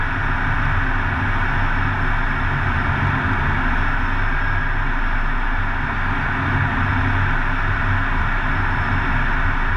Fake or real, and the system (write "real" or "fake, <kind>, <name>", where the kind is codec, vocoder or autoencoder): real